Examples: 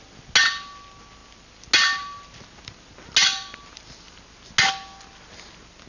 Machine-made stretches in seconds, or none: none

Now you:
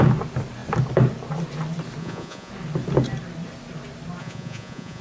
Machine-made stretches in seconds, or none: 2.0-2.5 (vocoder, Vocos); 4.2-5.0

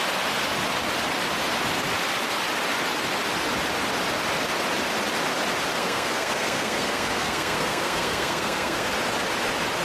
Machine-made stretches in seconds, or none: 5.8-8.9 (codec, SNAC)

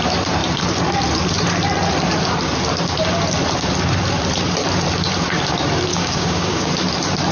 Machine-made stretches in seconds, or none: 5.9-6.7 (codec, DAC)